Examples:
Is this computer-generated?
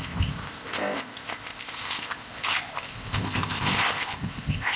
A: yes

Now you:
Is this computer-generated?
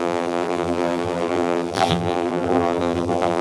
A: yes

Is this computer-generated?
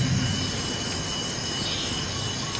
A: no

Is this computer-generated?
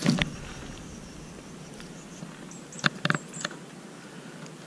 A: no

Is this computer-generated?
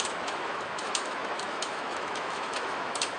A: yes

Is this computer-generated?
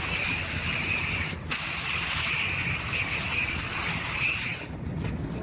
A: no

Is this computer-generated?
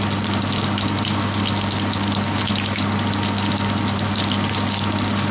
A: no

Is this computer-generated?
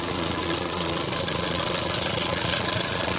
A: yes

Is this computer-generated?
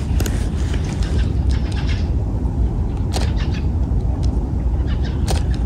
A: no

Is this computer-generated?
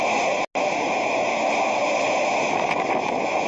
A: no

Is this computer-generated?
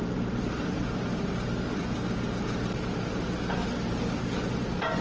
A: no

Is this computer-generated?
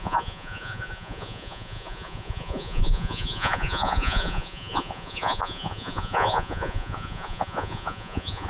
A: yes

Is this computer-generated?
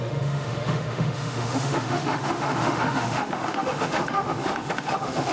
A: yes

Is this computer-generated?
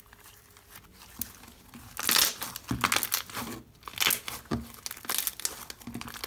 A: no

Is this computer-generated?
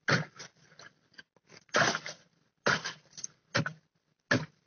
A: no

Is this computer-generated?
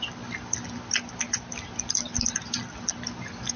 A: no